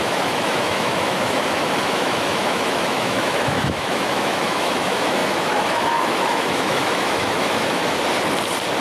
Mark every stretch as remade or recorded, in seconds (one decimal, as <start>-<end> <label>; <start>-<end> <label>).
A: 0.0-7.8 remade; 7.8-8.8 recorded